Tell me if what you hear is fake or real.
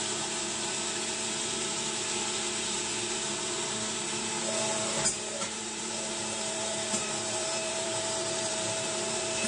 fake